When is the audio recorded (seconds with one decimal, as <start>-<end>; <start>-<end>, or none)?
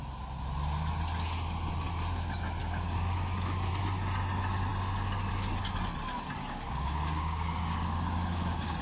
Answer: 0.0-2.6; 3.7-6.4